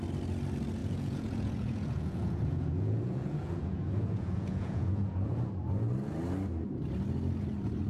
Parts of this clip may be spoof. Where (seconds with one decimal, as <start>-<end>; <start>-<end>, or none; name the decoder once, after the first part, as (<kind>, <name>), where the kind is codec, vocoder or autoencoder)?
0.8-5.5 (vocoder, Vocos)